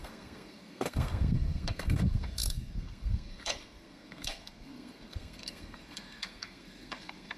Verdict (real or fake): fake